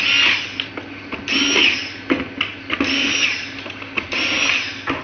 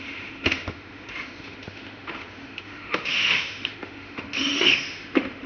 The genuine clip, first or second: first